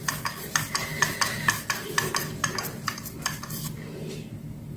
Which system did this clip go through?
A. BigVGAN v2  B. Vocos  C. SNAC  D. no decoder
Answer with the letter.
D